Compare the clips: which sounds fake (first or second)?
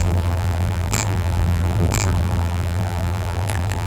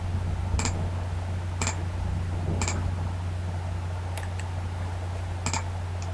first